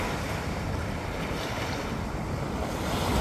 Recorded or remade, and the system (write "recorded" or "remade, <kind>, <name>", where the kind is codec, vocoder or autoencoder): recorded